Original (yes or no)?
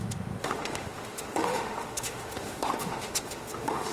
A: no